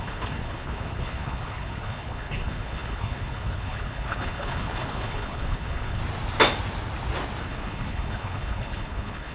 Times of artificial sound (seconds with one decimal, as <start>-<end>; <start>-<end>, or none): 0.0-6.0; 7.4-9.3